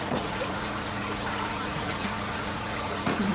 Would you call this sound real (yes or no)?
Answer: no